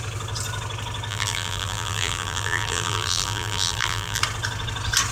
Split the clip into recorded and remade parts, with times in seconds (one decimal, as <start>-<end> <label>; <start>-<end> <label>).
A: 0.0-1.1 recorded; 1.1-4.2 remade; 4.2-5.1 recorded